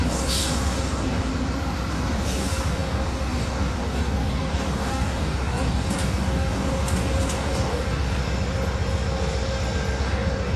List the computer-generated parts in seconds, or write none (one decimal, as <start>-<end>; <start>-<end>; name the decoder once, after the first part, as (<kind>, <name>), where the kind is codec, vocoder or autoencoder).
0.0-1.3 (codec, DAC); 1.9-8.2; 10.0-10.6